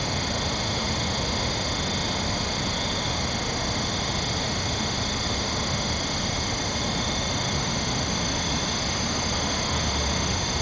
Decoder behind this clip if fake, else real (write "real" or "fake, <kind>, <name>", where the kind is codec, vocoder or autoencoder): real